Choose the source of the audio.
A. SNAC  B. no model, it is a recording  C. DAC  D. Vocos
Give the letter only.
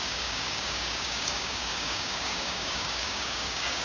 C